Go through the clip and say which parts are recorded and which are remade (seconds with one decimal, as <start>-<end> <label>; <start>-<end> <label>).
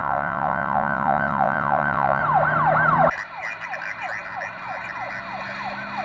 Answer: 0.0-2.2 remade; 2.2-6.0 recorded